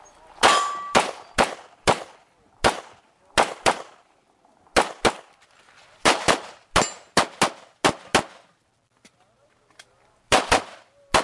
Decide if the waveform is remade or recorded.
recorded